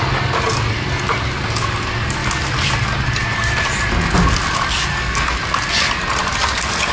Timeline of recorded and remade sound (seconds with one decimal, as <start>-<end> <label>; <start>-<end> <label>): 0.0-4.9 recorded; 4.9-5.4 remade; 5.4-6.9 recorded